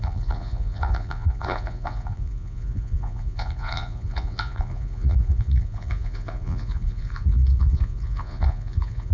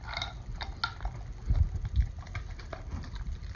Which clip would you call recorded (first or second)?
second